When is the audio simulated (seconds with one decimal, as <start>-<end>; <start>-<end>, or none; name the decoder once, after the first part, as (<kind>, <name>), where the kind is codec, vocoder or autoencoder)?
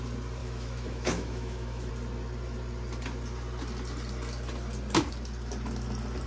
0.4-1.9 (autoencoder, DAC-VAE)